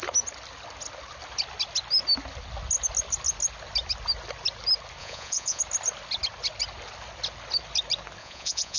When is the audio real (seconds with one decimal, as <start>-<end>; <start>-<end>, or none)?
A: 0.0-5.0; 5.6-8.2